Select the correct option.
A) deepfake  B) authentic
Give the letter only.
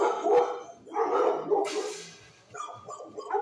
B